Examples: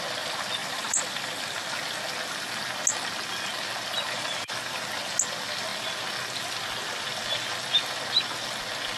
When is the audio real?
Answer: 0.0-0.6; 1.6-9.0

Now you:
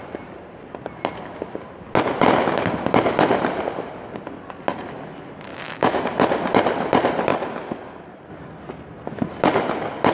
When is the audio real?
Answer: 0.0-5.5; 6.0-10.1